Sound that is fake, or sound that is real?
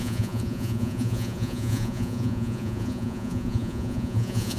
fake